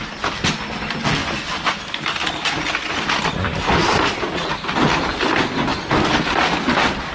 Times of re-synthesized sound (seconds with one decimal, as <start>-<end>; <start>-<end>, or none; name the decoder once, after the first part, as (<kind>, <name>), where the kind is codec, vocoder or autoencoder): 1.2-5.0 (vocoder, BigVGAN v2)